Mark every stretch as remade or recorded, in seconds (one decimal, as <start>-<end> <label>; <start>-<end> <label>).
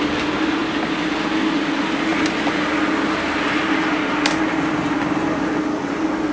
0.0-6.3 recorded